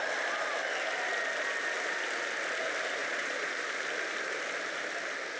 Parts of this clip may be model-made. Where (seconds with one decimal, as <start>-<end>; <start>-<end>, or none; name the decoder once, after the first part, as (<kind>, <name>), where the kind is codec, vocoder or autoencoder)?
3.0-3.5 (vocoder, Vocos)